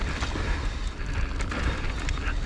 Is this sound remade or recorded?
recorded